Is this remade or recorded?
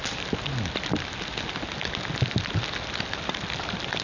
recorded